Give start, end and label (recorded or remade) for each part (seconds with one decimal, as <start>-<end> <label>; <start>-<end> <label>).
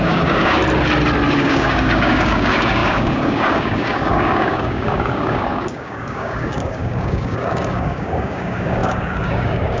0.0-0.6 remade; 0.6-1.3 recorded; 1.3-9.8 remade